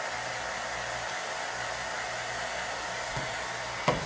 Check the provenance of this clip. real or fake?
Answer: real